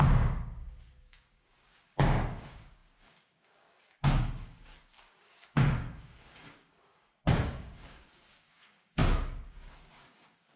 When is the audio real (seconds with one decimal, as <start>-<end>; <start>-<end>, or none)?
none